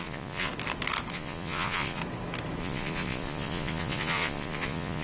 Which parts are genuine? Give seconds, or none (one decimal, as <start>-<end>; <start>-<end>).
0.5-1.1; 2.0-2.6

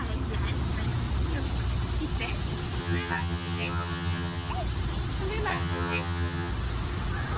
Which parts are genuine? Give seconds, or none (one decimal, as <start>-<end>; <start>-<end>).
0.0-2.8; 4.5-5.5; 6.5-7.4